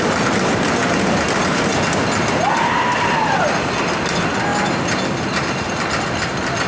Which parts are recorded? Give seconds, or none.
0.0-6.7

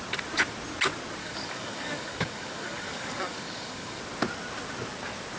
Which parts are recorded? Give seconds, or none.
0.0-1.2; 4.0-5.4

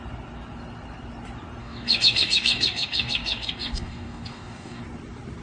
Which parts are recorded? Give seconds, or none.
0.0-1.6; 4.8-5.4